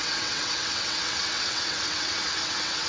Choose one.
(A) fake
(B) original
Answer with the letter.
A